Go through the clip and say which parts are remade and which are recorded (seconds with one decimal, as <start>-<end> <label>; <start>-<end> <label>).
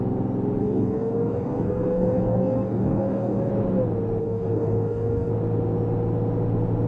0.0-0.6 recorded; 0.6-3.5 remade; 3.5-4.2 recorded; 4.2-5.3 remade; 5.3-6.9 recorded